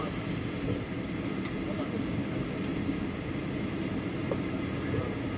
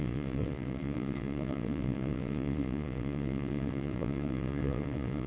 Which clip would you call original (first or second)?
first